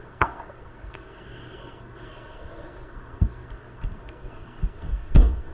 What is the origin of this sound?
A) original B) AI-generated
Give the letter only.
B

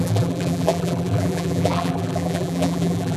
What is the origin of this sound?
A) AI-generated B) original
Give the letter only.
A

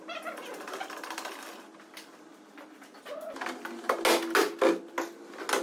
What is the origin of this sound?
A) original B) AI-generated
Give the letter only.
A